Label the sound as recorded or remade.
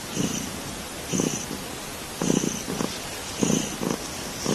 recorded